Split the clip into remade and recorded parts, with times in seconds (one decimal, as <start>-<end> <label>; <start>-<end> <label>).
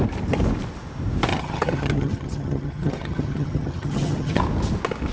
0.0-1.3 recorded; 1.3-4.4 remade; 4.4-5.1 recorded